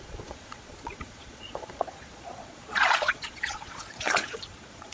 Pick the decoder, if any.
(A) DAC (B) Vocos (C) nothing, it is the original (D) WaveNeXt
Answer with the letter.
B